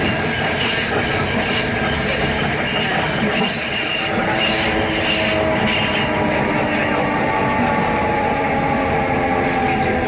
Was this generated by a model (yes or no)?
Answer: no